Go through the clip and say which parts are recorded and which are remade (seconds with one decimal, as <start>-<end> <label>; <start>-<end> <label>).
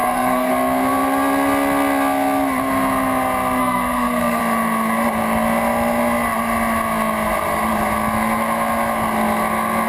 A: 0.0-0.5 remade; 0.5-3.6 recorded; 3.6-4.4 remade; 4.4-9.9 recorded